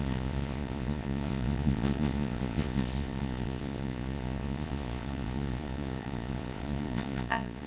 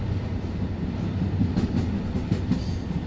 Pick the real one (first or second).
second